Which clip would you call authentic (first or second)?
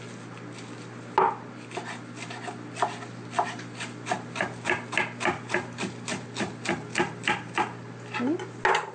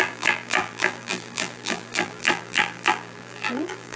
first